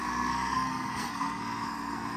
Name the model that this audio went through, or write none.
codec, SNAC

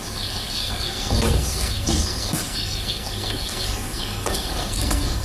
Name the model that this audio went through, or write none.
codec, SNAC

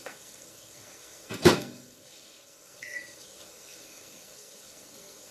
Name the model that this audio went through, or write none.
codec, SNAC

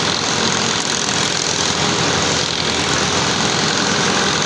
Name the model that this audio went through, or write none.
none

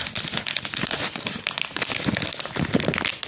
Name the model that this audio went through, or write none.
none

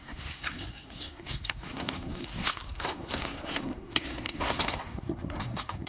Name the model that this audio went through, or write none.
codec, SNAC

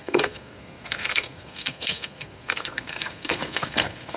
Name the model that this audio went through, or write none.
codec, SNAC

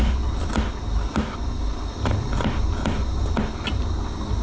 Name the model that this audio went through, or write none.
none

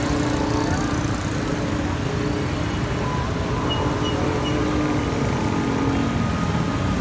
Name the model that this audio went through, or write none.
none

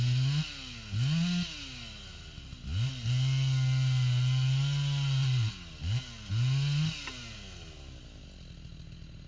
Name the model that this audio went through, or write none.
none